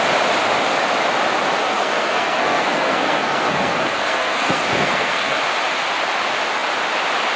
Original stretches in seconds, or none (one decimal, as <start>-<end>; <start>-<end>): 0.0-1.6; 5.4-7.4